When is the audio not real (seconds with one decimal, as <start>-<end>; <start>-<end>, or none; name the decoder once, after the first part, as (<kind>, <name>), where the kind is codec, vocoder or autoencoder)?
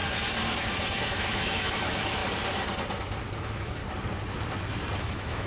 1.0-2.2 (autoencoder, DAC-VAE); 3.4-3.8; 5.0-5.5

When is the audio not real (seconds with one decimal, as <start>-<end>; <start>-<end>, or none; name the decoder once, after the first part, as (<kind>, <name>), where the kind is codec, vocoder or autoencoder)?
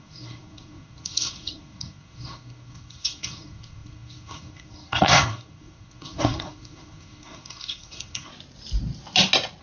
0.0-8.3 (codec, SNAC)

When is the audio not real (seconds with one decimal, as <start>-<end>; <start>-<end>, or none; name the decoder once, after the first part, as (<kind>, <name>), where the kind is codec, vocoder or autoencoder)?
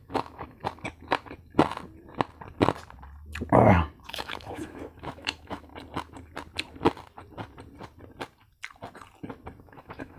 0.0-0.6 (autoencoder, DAC-VAE); 4.1-5.7; 9.6-10.2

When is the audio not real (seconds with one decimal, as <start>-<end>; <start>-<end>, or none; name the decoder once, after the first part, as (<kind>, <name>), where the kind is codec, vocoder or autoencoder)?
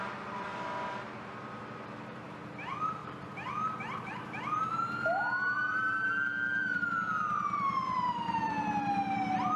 3.0-6.8 (vocoder, BigVGAN v2)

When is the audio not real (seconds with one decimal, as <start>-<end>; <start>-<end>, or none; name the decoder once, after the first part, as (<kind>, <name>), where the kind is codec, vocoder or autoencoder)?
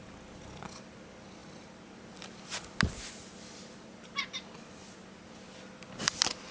none